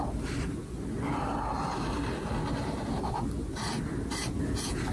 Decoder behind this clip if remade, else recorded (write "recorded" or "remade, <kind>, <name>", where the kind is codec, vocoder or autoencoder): recorded